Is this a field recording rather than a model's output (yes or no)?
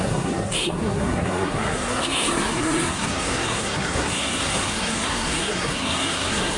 no